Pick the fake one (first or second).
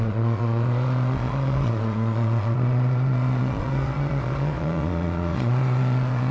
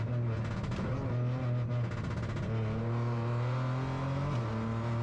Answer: first